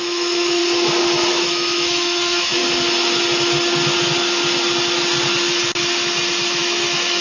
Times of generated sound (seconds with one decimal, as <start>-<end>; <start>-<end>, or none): 0.0-0.6; 1.3-2.6; 6.6-7.2